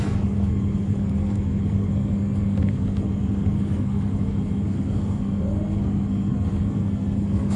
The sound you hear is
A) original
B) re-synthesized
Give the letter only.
B